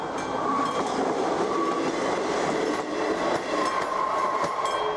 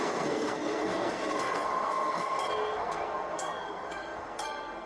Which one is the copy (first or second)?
second